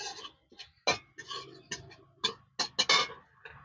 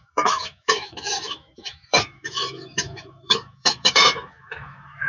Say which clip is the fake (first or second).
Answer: second